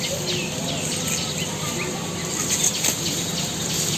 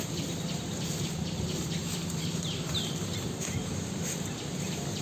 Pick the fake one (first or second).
second